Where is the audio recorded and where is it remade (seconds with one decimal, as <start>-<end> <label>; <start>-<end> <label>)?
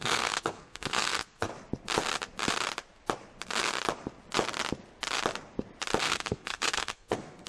0.0-1.5 remade; 1.5-6.0 recorded; 6.0-7.5 remade